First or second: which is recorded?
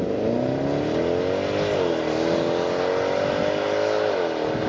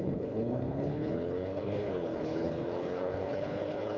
first